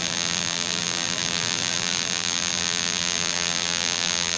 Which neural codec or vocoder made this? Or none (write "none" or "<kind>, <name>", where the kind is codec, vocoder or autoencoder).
vocoder, BigVGAN v2